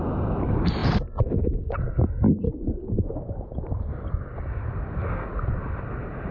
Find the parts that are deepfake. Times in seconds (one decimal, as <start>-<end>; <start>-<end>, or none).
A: none